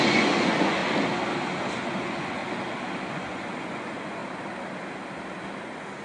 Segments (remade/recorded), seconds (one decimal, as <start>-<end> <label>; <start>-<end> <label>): 0.0-0.8 remade; 0.8-2.0 recorded; 2.0-2.4 remade; 2.4-3.1 recorded; 3.1-4.2 remade; 4.2-5.6 recorded; 5.6-6.0 remade